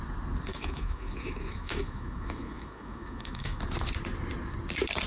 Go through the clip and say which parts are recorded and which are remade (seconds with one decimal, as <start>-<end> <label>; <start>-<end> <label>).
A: 0.0-0.5 recorded; 0.5-3.6 remade; 3.6-5.1 recorded